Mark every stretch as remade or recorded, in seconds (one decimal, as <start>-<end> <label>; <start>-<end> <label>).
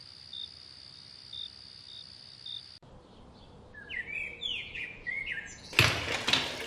0.0-4.5 recorded; 4.5-5.7 remade; 5.7-6.7 recorded